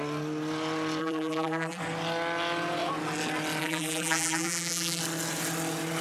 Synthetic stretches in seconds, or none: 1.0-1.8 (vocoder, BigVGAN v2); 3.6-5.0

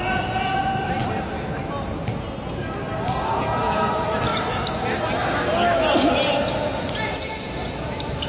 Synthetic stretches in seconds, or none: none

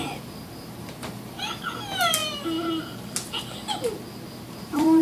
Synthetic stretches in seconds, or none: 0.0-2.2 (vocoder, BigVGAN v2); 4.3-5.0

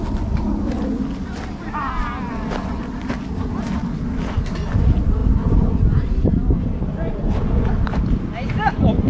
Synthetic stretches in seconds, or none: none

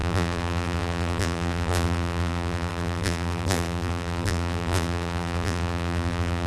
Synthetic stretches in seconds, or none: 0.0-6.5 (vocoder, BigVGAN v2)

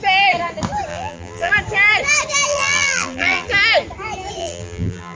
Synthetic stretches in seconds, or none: 0.9-1.5 (vocoder, BigVGAN v2); 2.5-3.5; 4.4-5.2

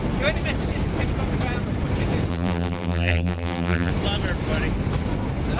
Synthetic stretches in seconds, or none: 2.3-3.9 (vocoder, BigVGAN v2)